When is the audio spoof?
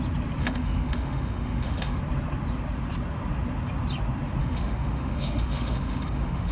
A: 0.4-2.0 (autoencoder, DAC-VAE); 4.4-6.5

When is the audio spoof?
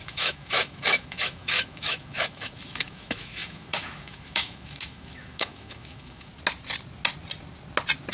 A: 0.0-6.3 (autoencoder, DAC-VAE)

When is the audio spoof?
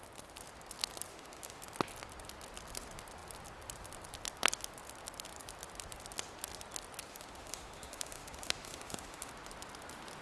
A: 1.1-1.6 (autoencoder, DAC-VAE); 7.1-9.3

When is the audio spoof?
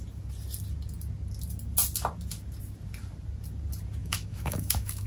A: 4.0-5.1 (autoencoder, DAC-VAE)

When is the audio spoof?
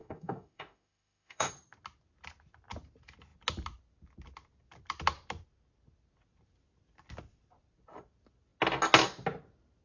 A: 0.0-1.5 (autoencoder, DAC-VAE)